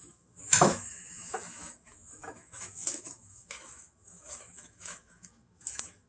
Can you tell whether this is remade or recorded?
remade